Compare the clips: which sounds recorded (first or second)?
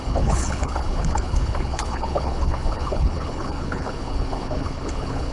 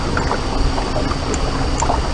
second